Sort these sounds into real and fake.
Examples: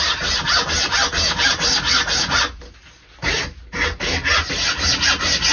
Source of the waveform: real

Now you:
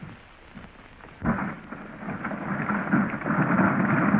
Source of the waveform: real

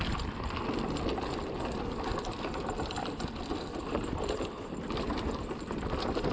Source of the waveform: real